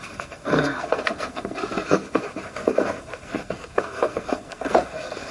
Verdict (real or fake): fake